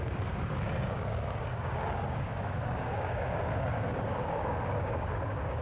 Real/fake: fake